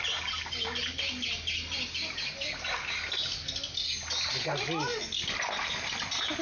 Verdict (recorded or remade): recorded